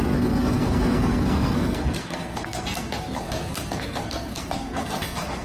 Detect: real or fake fake